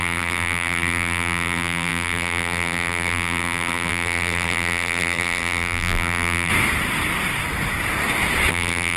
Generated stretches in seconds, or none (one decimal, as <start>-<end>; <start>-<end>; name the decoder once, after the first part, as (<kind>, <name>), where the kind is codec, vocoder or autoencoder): 0.0-6.5 (vocoder, BigVGAN v2); 8.5-9.0